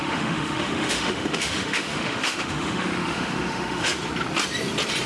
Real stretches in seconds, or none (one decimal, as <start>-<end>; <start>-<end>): 3.9-5.1